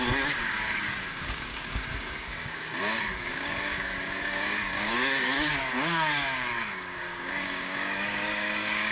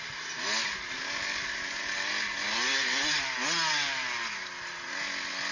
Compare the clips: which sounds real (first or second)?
second